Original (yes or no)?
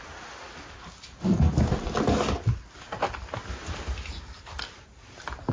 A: yes